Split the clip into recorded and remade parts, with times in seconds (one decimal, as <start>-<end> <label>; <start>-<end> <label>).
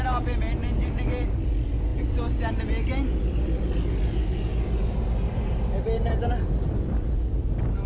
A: 0.0-7.9 recorded